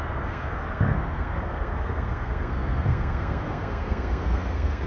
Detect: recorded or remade remade